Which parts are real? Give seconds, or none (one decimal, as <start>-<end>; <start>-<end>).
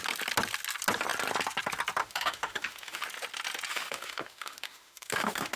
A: 0.0-2.0; 3.0-3.7